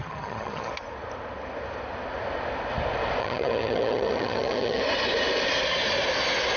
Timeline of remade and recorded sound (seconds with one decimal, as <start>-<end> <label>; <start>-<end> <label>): 0.0-0.7 remade; 0.7-3.2 recorded; 3.2-4.8 remade; 4.8-6.6 recorded